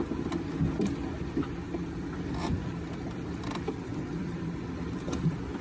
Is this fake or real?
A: fake